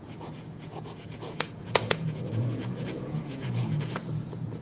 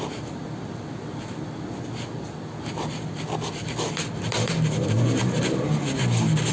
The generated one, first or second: first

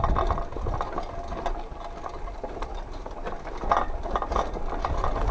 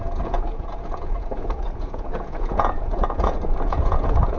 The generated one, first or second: second